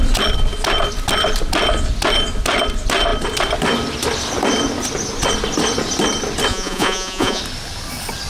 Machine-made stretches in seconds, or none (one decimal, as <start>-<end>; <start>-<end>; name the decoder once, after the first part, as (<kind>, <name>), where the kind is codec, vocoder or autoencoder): 6.5-7.4 (vocoder, Vocos)